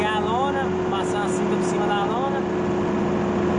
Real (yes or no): yes